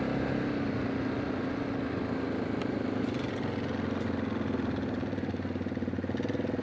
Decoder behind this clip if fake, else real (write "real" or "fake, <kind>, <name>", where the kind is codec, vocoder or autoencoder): real